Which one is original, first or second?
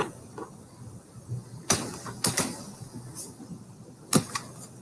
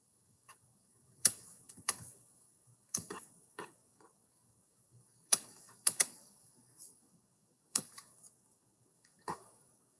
first